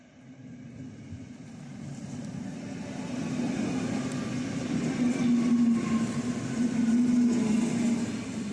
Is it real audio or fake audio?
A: real